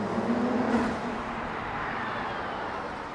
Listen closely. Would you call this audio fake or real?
real